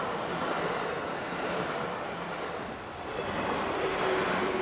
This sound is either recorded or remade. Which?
recorded